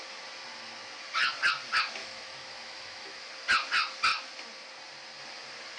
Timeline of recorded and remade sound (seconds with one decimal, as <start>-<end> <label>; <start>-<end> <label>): 0.0-2.0 recorded; 2.0-3.3 remade; 3.3-5.8 recorded